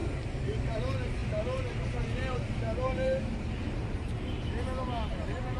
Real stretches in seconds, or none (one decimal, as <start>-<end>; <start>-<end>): 0.0-5.6